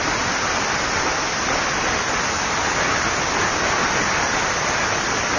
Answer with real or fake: real